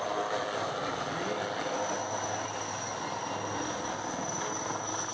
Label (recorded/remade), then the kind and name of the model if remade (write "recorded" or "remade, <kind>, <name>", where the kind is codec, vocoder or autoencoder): recorded